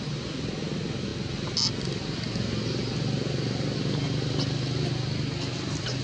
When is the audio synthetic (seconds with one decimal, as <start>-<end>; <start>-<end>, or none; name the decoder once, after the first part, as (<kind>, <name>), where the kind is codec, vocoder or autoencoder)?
none